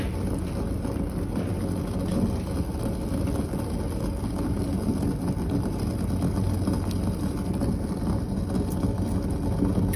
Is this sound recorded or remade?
recorded